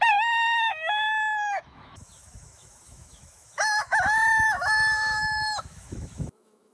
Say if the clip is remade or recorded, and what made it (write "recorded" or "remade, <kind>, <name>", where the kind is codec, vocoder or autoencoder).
remade, autoencoder, DAC-VAE